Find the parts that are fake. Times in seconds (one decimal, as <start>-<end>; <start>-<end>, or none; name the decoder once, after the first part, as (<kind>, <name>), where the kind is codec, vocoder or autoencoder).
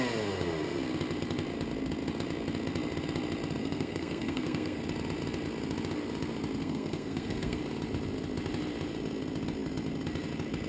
3.6-4.8 (codec, SNAC); 6.6-7.6